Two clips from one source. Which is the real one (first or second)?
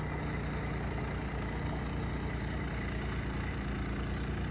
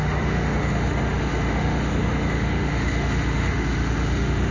first